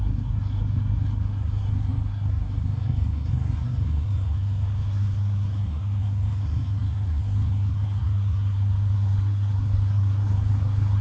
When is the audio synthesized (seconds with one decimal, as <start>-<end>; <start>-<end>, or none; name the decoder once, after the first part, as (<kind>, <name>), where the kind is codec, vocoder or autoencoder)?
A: 0.0-11.0 (codec, SNAC)